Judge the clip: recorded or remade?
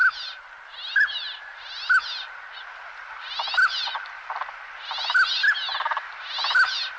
recorded